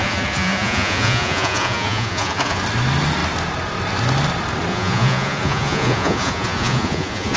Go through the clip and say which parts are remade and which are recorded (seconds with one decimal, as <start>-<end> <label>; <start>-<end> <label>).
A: 0.0-2.6 remade; 2.6-4.7 recorded; 4.7-7.4 remade